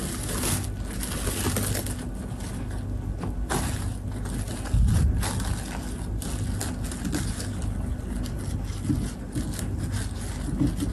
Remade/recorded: recorded